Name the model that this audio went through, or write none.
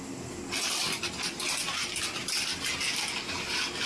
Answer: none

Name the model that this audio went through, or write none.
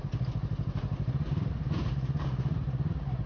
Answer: none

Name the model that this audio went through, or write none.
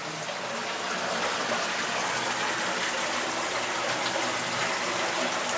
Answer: none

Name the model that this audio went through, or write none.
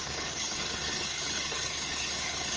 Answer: codec, HILCodec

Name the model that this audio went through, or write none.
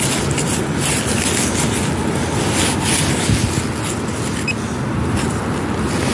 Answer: none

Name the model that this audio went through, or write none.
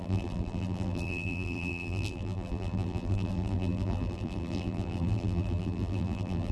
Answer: vocoder, BigVGAN v2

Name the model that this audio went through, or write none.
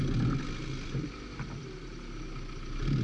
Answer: none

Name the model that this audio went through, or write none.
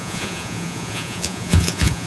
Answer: vocoder, Vocos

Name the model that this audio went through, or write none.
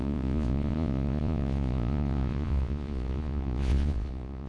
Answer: vocoder, Vocos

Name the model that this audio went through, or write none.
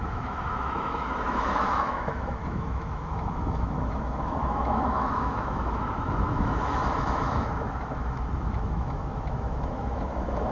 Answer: autoencoder, DAC-VAE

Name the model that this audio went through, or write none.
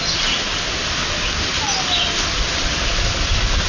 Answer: none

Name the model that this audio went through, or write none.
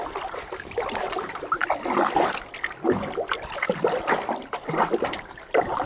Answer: none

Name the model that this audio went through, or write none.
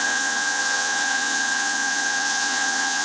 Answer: vocoder, Vocos